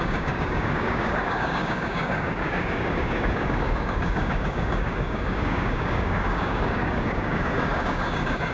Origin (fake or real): fake